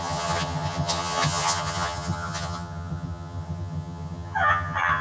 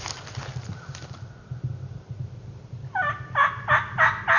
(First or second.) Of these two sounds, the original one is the second